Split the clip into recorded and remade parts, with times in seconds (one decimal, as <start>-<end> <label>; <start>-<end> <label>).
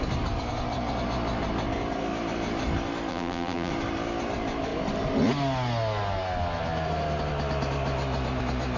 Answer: 0.0-3.1 recorded; 3.1-3.7 remade; 3.7-8.8 recorded